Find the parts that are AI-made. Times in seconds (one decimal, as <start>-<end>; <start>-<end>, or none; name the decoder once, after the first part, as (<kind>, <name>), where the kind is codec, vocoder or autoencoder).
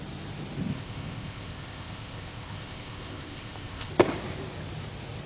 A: 0.7-3.9 (codec, ZipCodec)